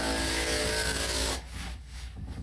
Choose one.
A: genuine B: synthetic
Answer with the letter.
B